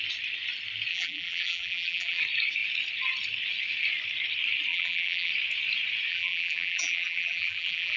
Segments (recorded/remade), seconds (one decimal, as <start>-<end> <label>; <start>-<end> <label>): 0.0-0.9 recorded; 0.9-2.2 remade; 2.2-4.7 recorded; 4.7-5.3 remade; 5.3-6.1 recorded; 6.1-8.0 remade